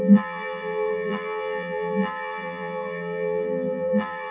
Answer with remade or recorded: remade